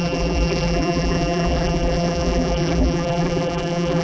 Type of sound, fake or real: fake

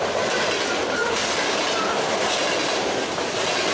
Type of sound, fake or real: real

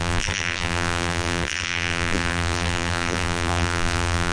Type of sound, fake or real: fake